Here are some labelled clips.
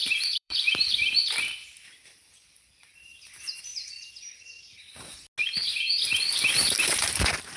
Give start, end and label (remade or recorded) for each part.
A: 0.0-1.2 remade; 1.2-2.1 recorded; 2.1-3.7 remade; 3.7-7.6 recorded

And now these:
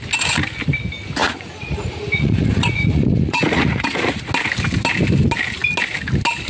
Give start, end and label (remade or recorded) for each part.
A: 0.0-1.2 recorded; 1.2-4.2 remade; 4.2-6.5 recorded

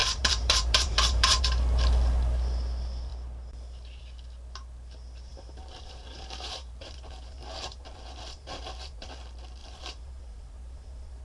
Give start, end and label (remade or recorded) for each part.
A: 0.0-1.4 remade; 1.4-5.3 recorded; 5.3-9.2 remade; 9.2-9.6 recorded; 9.6-11.2 remade

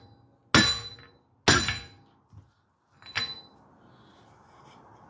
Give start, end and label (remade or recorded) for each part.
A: 0.0-5.1 recorded

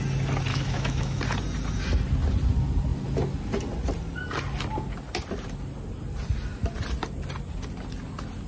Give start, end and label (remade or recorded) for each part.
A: 0.0-0.5 recorded; 0.5-1.2 remade; 1.2-8.5 recorded

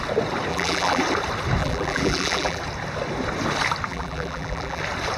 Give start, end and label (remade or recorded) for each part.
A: 0.0-0.5 recorded; 0.5-1.0 remade; 1.0-1.6 recorded; 1.6-2.6 remade; 2.6-3.9 recorded; 3.9-4.8 remade; 4.8-5.2 recorded